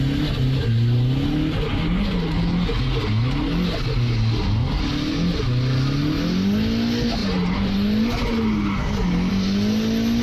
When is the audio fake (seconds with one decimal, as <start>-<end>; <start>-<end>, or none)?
none